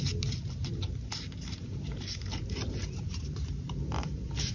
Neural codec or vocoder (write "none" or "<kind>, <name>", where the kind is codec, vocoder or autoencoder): vocoder, BigVGAN v2